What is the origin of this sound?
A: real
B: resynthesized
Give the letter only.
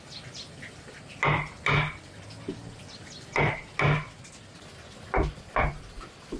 A